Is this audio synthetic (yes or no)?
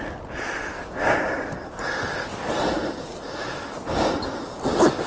no